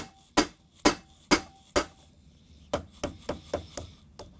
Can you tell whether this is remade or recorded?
recorded